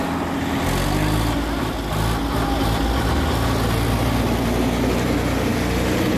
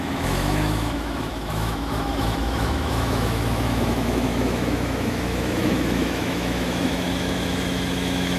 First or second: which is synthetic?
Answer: second